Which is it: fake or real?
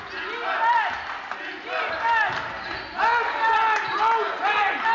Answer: real